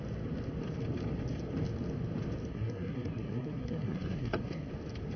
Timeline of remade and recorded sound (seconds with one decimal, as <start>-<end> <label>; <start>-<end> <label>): 0.0-2.5 recorded; 2.5-4.7 remade; 4.7-5.2 recorded